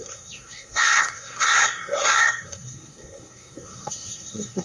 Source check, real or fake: fake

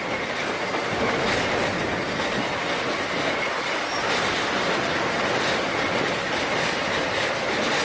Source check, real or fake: real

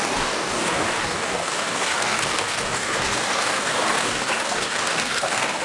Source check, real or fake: fake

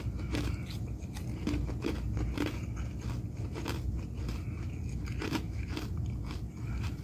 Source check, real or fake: real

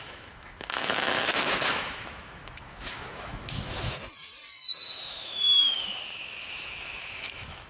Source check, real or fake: fake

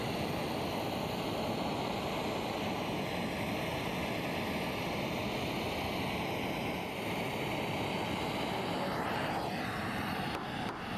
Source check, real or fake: real